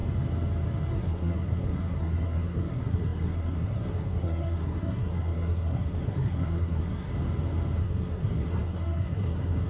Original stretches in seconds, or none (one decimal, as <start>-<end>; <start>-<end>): 0.0-0.9; 7.1-7.8